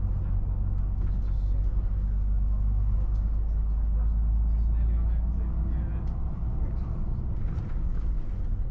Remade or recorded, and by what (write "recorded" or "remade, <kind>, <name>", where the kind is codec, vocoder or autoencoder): recorded